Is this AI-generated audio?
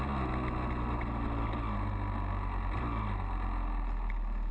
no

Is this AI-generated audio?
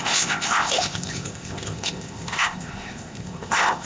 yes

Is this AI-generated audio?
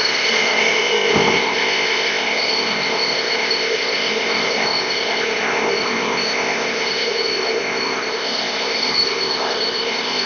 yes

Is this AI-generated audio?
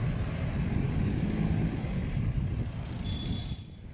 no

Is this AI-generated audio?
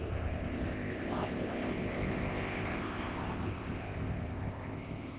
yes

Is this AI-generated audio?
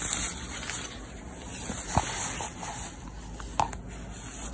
no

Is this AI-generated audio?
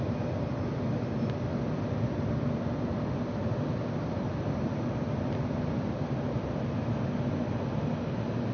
no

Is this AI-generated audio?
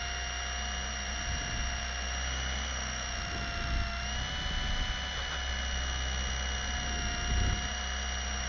no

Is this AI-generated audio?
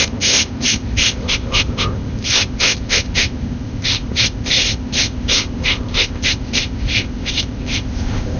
yes